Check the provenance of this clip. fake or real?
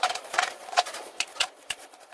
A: fake